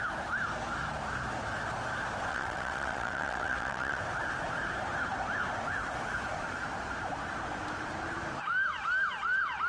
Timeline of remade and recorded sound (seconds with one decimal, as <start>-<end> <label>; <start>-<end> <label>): 0.0-2.3 recorded; 2.3-4.0 remade; 4.0-9.7 recorded